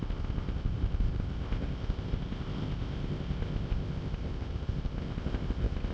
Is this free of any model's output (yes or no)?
no